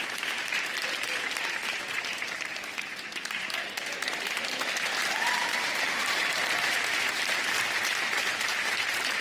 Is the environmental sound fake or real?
fake